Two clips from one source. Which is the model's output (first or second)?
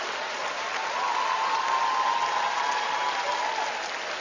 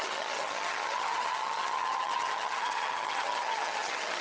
second